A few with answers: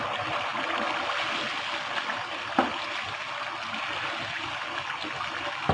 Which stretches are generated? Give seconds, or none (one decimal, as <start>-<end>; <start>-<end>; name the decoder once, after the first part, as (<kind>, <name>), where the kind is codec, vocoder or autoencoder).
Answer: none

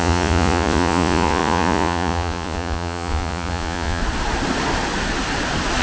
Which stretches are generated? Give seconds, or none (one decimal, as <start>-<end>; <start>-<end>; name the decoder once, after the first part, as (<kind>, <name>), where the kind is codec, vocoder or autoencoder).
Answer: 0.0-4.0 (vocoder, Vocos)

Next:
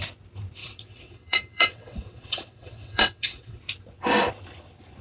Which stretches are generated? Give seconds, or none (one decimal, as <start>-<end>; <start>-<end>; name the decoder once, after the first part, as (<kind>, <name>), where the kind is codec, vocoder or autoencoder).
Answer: 0.6-3.6 (vocoder, WaveNeXt)

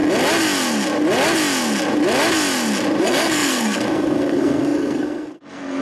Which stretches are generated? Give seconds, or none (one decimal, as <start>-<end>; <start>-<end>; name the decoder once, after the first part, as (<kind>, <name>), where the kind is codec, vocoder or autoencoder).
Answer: 3.0-5.8 (codec, SNAC)